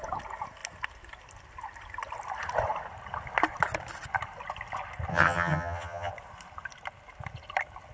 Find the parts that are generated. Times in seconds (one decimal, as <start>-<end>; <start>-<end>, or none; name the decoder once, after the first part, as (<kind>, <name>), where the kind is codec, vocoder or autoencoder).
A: 5.1-6.1 (vocoder, HiFi-GAN)